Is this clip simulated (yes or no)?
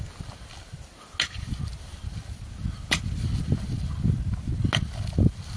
no